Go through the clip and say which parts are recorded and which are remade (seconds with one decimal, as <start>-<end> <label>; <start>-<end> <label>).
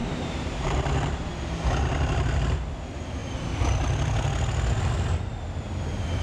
0.0-1.3 remade; 1.3-6.2 recorded